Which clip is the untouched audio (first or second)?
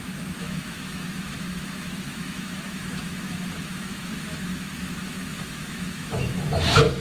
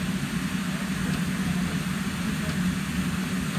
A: second